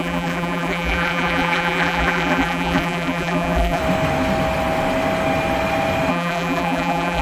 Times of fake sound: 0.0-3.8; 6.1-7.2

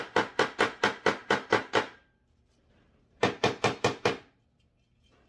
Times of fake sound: 1.2-4.4

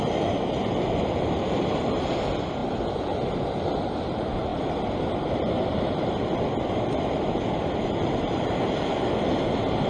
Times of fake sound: 0.0-2.6; 3.4-9.9

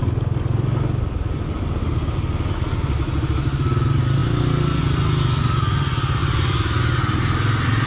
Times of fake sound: 6.2-6.8